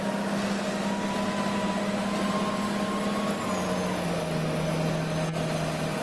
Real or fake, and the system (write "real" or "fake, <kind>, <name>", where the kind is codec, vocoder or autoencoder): real